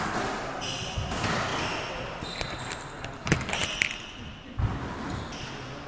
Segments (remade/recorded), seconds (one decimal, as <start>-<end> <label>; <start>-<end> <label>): 0.0-5.9 recorded